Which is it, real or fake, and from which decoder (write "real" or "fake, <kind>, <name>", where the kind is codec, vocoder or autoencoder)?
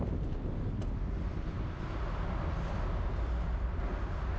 real